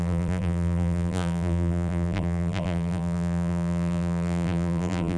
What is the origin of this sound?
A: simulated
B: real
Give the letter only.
A